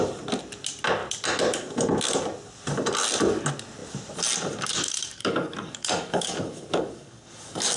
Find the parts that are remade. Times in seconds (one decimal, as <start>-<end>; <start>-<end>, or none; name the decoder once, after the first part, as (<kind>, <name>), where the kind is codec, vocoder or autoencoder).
4.7-7.8 (codec, DAC)